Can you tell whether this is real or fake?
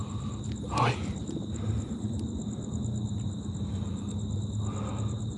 real